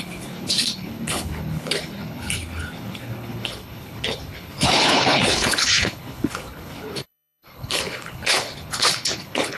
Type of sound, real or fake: fake